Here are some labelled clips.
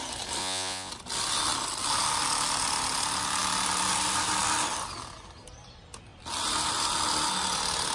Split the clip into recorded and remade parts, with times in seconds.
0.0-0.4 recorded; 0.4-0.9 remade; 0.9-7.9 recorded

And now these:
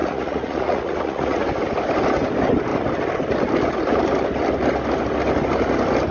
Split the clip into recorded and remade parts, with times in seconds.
0.0-1.4 remade; 1.4-6.1 recorded